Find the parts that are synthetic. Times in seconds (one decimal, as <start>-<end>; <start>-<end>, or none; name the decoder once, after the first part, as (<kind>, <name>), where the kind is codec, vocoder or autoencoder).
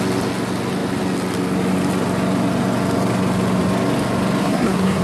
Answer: 4.4-5.0 (codec, SNAC)